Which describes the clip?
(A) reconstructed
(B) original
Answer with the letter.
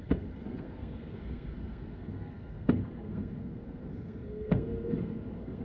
A